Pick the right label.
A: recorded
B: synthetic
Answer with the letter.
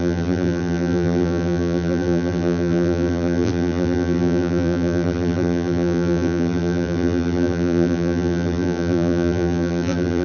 B